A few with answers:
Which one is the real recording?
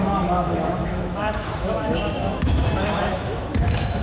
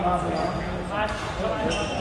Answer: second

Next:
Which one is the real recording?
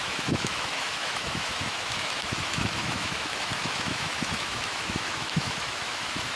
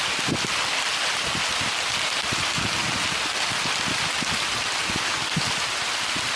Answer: second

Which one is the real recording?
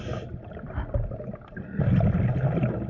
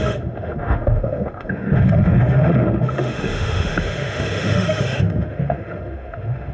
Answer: first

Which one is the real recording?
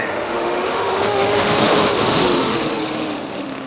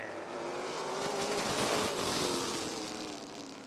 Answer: second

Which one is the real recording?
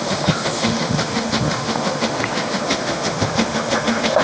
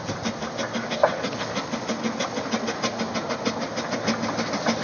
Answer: second